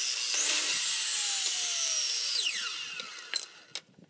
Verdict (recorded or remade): recorded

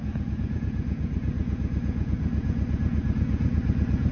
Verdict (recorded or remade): remade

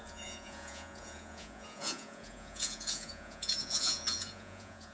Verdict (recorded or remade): remade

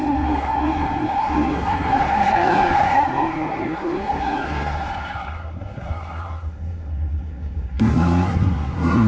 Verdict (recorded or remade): remade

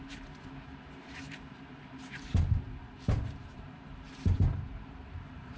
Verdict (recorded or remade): remade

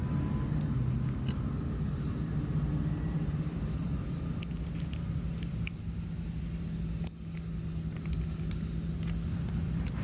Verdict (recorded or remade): recorded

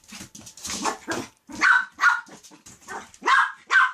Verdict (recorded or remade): remade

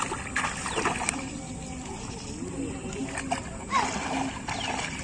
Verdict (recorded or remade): recorded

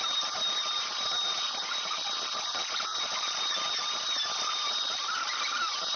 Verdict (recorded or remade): remade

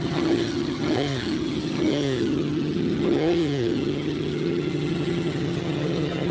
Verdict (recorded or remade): remade